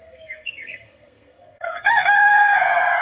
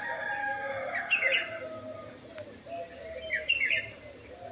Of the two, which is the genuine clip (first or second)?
second